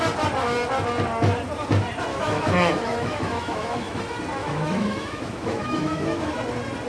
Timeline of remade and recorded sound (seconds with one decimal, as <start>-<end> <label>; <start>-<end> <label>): 0.0-2.1 recorded; 2.1-4.0 remade; 4.0-4.4 recorded; 4.4-6.3 remade; 6.3-6.9 recorded